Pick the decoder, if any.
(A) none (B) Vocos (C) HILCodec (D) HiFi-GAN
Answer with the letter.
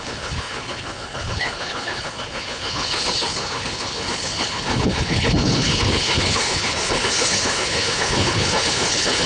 C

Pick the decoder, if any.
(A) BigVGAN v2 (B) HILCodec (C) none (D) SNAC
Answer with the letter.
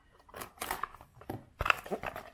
C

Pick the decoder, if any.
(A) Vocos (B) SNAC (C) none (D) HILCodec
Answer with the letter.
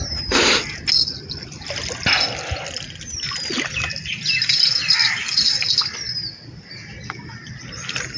C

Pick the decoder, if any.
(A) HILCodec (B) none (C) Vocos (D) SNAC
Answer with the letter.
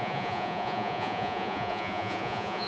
C